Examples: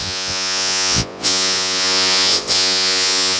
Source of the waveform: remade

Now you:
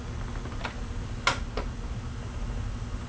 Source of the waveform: recorded